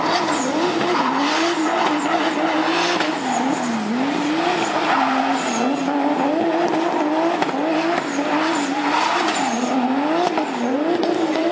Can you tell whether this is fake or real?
real